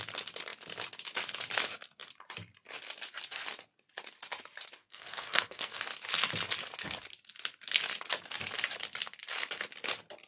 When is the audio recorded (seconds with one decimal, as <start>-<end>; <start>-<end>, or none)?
0.0-4.8; 5.8-10.3